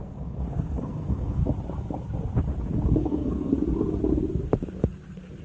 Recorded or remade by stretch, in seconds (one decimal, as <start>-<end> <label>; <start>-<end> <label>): 0.0-1.4 remade; 1.4-3.0 recorded; 3.0-3.5 remade; 3.5-5.4 recorded